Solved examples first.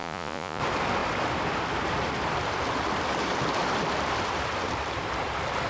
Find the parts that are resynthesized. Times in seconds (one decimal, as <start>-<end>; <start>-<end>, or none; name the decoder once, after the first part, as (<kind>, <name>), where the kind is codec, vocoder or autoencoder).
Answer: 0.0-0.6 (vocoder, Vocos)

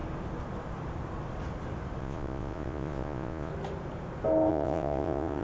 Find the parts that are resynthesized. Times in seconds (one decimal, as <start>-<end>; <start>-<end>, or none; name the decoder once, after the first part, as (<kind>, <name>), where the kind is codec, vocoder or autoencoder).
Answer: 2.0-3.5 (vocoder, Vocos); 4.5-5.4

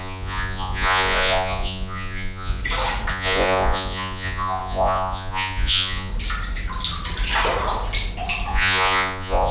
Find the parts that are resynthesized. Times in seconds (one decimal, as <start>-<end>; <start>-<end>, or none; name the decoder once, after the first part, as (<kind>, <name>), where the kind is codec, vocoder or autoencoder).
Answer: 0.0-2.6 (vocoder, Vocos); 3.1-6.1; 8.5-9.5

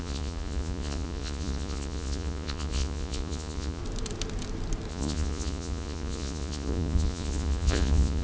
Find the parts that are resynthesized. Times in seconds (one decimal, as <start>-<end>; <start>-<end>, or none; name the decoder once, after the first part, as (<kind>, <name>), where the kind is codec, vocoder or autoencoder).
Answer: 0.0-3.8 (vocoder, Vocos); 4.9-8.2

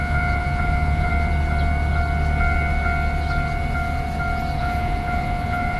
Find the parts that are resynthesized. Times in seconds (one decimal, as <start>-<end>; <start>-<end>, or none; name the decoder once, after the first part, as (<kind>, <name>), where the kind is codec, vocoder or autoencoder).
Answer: 0.0-1.1 (vocoder, Vocos); 4.6-5.8

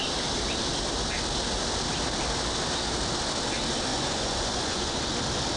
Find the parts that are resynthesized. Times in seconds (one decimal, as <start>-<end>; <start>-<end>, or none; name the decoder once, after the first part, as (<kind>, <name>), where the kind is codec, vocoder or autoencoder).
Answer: 3.9-5.0 (vocoder, Vocos)